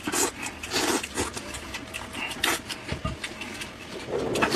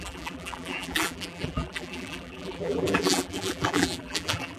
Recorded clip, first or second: first